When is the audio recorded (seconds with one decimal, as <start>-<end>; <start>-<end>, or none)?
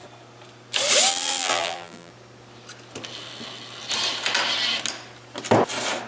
0.0-1.1; 2.1-6.1